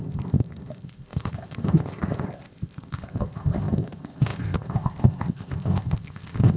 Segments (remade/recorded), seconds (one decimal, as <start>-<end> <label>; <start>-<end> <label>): 0.0-6.6 remade